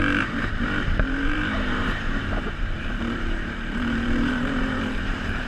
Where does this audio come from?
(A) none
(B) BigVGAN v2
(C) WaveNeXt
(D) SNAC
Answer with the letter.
B